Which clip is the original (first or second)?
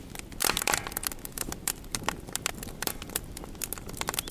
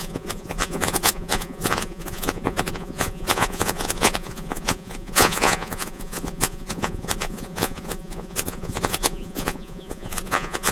first